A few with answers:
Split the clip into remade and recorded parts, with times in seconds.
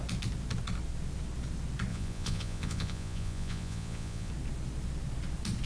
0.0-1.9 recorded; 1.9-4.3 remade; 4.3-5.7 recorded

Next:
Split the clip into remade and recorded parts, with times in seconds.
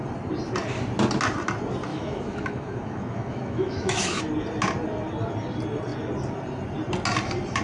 0.0-1.9 recorded; 1.9-4.2 remade; 4.2-7.6 recorded